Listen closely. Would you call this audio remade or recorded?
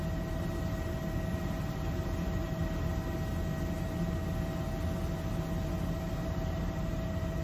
recorded